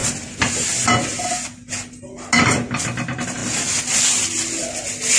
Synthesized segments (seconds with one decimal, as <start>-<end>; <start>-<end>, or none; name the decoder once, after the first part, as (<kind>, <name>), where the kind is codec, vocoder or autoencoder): none